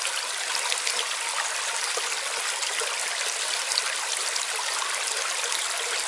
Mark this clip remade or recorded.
recorded